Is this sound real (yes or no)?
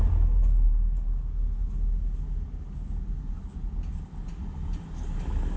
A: yes